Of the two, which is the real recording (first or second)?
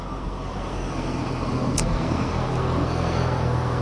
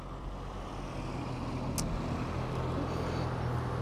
second